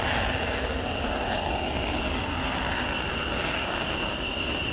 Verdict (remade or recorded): recorded